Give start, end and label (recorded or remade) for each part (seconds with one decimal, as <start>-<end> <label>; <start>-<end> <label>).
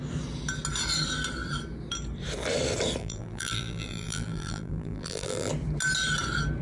0.0-3.0 recorded; 3.0-5.5 remade; 5.5-6.6 recorded